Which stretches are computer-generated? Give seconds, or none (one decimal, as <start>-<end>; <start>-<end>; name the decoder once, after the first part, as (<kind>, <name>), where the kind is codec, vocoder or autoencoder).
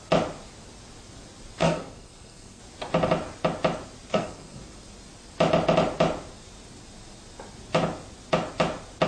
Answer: 1.6-2.6 (codec, SNAC); 4.1-4.6